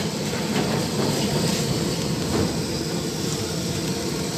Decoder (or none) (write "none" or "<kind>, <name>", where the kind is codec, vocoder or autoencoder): vocoder, BigVGAN v2